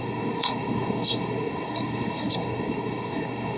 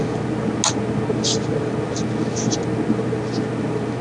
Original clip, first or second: second